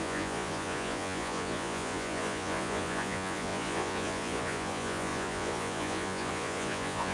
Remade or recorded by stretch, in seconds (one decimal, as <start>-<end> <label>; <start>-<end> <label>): 0.0-7.1 remade